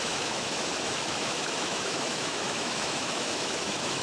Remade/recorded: remade